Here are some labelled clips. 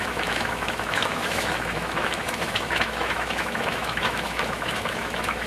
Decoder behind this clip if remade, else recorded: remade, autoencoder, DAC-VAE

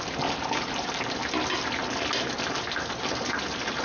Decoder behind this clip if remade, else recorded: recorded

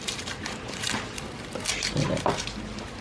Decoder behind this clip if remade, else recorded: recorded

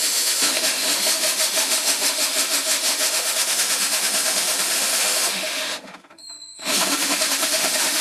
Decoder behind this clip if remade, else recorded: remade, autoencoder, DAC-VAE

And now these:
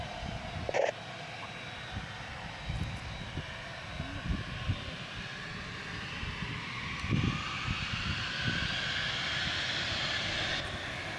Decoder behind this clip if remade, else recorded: recorded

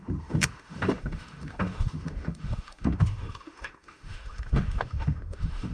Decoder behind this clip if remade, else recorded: remade, autoencoder, DAC-VAE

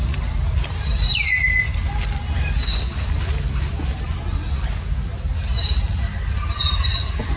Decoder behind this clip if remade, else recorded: recorded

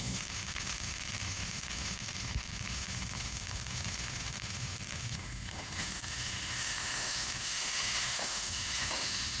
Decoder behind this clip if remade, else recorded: remade, autoencoder, DAC-VAE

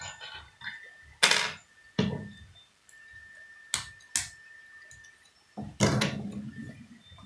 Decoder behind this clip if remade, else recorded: recorded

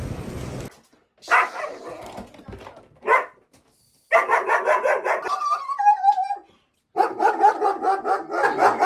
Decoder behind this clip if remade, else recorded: recorded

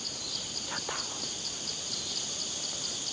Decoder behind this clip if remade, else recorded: recorded